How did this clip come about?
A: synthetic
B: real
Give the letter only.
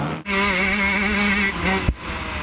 B